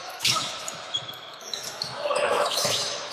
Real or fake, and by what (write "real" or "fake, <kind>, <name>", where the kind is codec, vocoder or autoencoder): fake, autoencoder, DAC-VAE